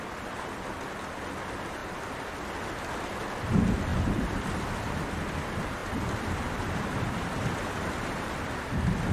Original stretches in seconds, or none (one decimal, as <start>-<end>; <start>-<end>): 0.0-3.9; 4.8-5.8; 8.6-9.1

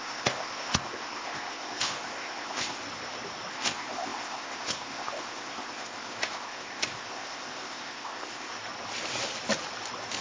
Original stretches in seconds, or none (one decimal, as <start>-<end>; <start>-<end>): 2.8-3.5; 8.5-10.2

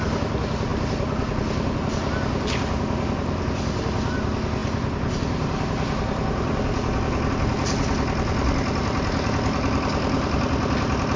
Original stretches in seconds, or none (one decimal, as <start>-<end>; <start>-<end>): 0.0-11.2

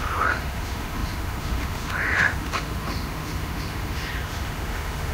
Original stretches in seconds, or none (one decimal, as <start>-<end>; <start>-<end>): none

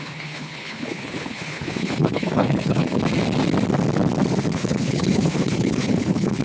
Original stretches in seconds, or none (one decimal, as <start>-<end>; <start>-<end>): 3.0-4.5

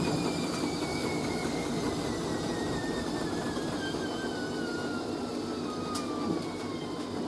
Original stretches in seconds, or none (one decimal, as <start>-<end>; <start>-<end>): 0.0-0.9; 1.8-7.3

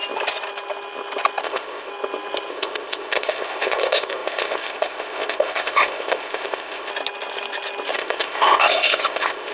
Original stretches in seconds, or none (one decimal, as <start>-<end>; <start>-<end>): 0.0-1.4; 1.9-2.5; 6.9-7.9

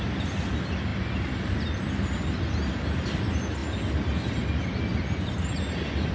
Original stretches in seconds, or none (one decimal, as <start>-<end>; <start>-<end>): 0.0-6.1